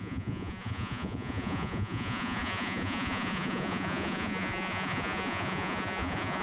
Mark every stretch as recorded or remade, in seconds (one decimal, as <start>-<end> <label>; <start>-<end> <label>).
0.0-6.4 remade